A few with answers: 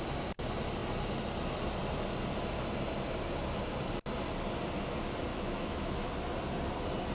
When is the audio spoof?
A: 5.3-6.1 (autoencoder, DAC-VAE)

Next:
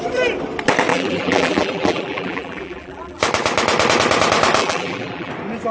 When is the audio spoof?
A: 0.9-3.2 (vocoder, BigVGAN v2); 4.6-5.3

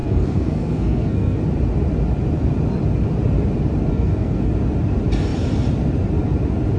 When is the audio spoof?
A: 0.0-1.4 (codec, SNAC); 3.9-4.5